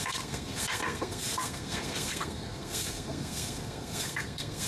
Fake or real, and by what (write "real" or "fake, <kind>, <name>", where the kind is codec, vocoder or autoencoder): fake, codec, SNAC